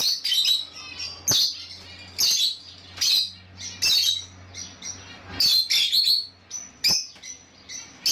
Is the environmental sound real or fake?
real